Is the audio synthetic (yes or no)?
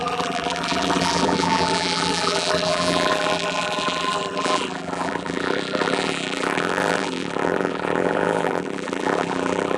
yes